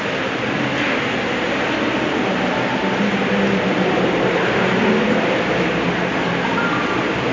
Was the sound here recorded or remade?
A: recorded